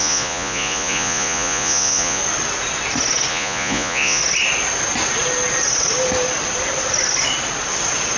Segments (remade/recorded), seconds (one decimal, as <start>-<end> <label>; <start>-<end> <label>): 0.0-2.2 remade; 2.2-3.3 recorded; 3.3-4.2 remade; 4.2-8.2 recorded